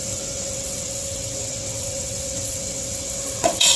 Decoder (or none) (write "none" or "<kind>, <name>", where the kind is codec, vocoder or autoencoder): vocoder, WaveNeXt